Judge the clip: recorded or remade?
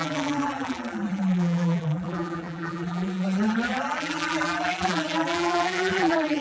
remade